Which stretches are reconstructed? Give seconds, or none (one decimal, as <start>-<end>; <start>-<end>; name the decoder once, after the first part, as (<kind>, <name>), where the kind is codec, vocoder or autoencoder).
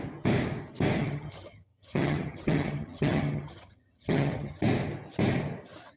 1.0-4.6 (vocoder, HiFi-GAN)